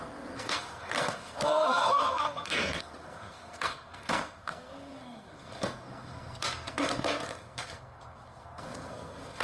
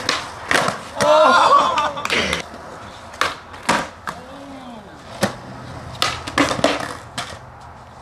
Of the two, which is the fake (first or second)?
first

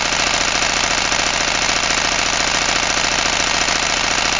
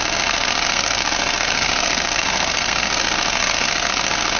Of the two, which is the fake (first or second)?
second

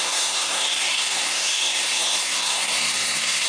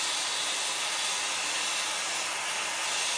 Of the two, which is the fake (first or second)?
first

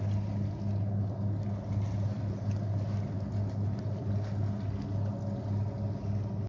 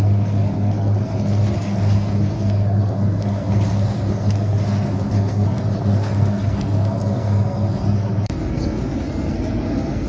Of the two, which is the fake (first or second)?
second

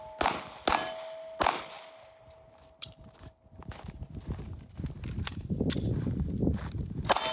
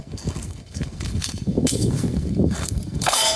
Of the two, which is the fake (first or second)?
second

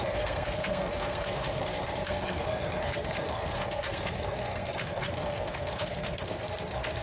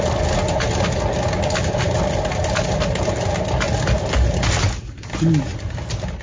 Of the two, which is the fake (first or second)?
first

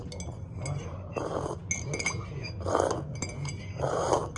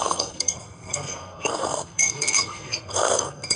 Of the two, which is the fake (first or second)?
second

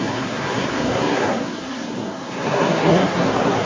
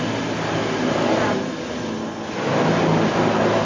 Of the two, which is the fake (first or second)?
first